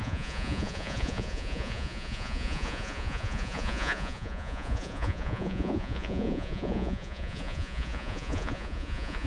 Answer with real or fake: fake